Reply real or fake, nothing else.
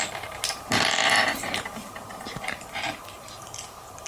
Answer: fake